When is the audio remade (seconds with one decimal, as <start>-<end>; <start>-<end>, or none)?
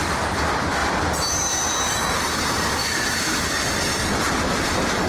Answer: 2.8-3.5